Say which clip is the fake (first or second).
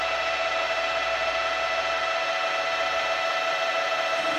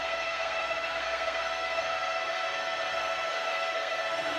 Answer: second